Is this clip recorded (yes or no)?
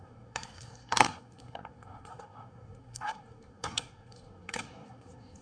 no